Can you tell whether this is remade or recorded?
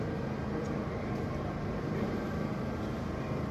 remade